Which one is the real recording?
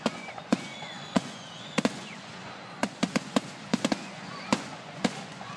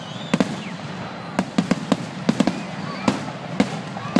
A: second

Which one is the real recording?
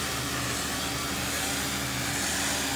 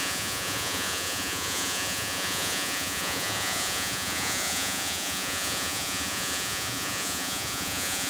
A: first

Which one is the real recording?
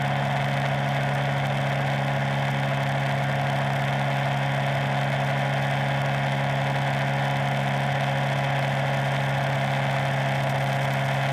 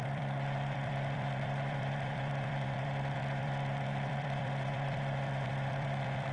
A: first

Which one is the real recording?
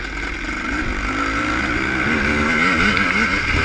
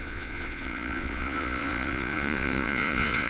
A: first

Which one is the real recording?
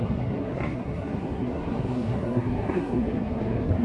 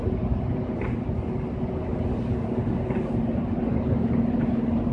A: second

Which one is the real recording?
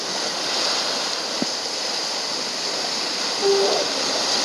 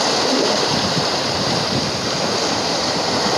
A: first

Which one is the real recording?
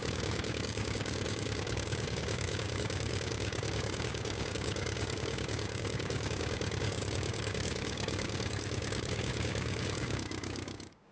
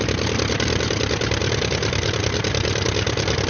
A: second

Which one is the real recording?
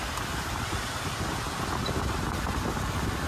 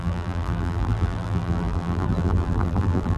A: first